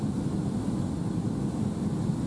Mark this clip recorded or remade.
recorded